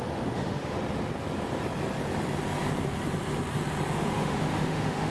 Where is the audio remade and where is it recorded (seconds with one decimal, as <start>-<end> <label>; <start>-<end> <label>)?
0.0-0.8 remade; 0.8-3.9 recorded; 3.9-5.1 remade